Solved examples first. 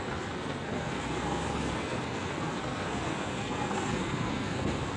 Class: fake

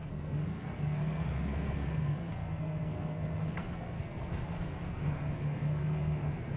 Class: fake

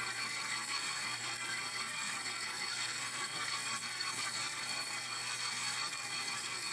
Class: fake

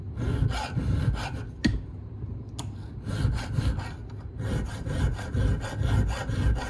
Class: real